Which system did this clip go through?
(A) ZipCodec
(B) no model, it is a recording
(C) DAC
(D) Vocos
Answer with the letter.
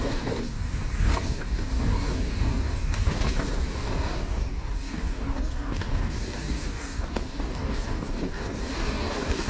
C